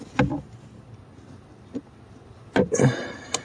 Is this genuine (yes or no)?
yes